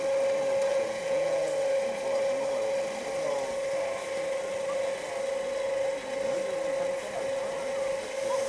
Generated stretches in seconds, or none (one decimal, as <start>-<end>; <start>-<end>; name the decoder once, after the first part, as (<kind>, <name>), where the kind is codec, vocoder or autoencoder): 0.7-1.5 (vocoder, Vocos)